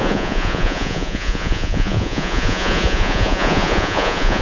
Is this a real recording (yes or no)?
no